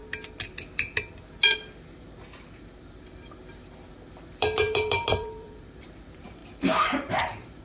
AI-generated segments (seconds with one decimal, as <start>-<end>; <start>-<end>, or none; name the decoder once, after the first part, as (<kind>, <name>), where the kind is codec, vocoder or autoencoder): 4.4-7.6 (vocoder, BigVGAN v2)